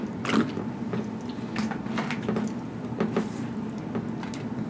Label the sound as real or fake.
real